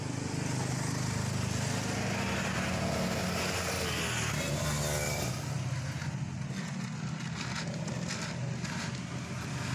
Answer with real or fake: real